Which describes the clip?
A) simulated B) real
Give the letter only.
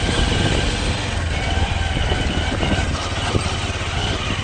B